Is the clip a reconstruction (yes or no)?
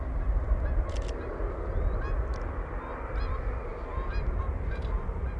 no